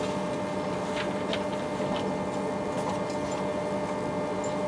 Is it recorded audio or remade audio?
recorded